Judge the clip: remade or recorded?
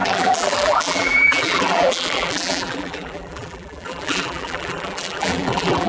remade